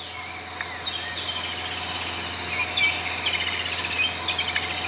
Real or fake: real